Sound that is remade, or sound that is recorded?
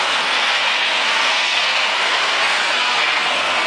remade